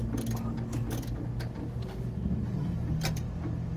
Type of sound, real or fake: real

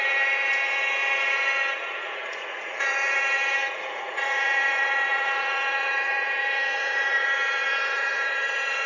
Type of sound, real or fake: fake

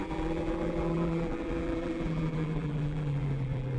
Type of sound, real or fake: fake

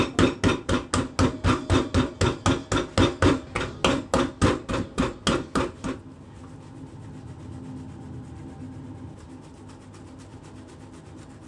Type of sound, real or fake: real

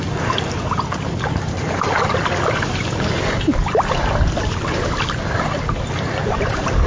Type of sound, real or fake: real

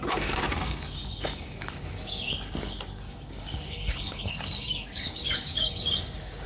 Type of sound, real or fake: fake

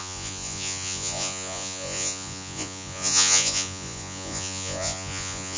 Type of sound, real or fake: fake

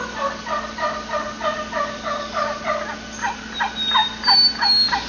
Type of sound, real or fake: real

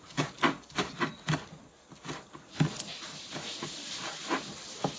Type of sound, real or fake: real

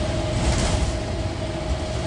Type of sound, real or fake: real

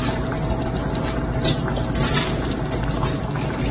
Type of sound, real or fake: real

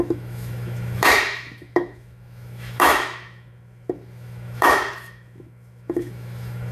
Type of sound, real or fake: fake